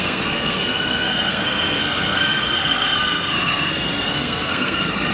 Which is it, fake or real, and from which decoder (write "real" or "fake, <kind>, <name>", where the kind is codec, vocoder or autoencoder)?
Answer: fake, codec, SNAC